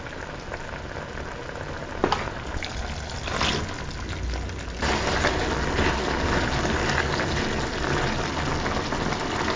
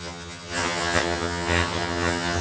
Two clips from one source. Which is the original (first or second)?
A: first